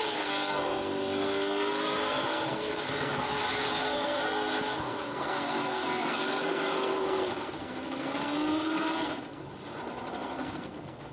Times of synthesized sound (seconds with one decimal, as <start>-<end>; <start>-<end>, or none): 0.0-9.4; 10.1-11.1